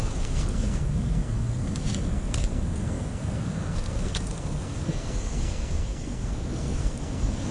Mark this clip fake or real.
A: fake